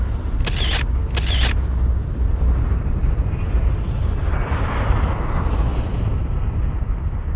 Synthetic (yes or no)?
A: no